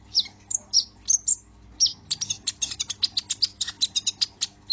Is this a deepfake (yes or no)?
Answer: no